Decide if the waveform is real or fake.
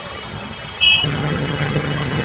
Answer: fake